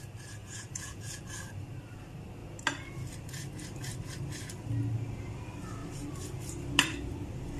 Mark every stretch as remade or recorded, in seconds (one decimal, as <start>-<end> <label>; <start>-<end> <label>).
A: 0.0-0.4 recorded; 0.4-1.2 remade; 1.2-7.6 recorded